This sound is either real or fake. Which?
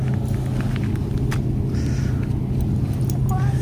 real